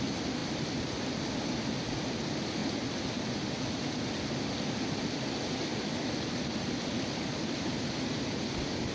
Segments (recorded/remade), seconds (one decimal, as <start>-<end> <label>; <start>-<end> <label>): 0.0-2.6 remade; 2.6-5.1 recorded; 5.1-5.7 remade; 5.7-8.9 recorded